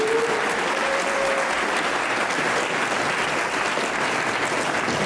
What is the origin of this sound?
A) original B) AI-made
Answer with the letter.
A